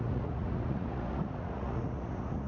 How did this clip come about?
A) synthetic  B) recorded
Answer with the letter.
A